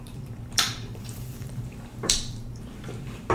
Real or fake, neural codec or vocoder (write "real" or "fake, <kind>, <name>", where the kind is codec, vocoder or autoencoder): fake, vocoder, BigVGAN v2